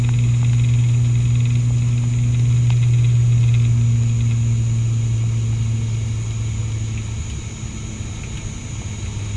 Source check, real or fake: real